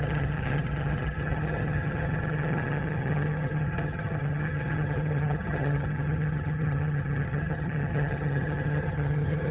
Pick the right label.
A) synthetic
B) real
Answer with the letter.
A